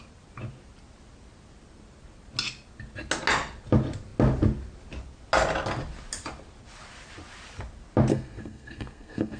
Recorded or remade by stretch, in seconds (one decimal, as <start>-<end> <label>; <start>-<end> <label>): 0.0-8.1 recorded; 8.1-9.4 remade